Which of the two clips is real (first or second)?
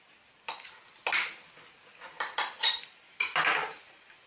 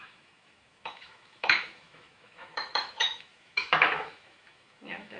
first